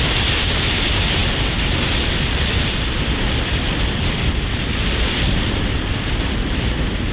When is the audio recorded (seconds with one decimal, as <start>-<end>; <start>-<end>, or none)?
0.0-7.1